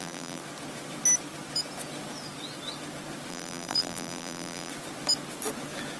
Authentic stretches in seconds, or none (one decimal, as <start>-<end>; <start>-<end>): 0.4-3.3; 4.7-6.0